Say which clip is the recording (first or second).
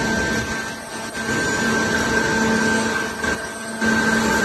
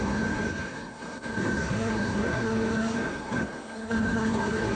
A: first